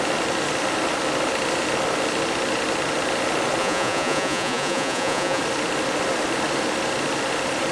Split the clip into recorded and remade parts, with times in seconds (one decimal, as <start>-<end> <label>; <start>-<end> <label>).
0.0-3.6 recorded; 3.6-5.4 remade; 5.4-7.7 recorded